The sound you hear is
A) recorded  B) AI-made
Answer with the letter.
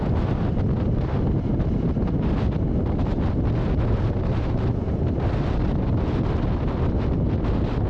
A